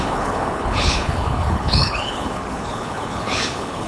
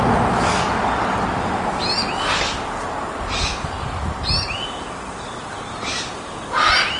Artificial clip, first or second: first